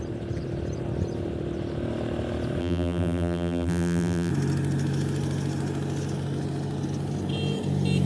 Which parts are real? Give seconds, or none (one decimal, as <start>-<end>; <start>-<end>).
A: 0.0-2.6; 4.3-8.1